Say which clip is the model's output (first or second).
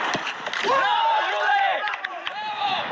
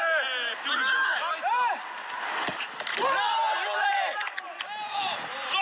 first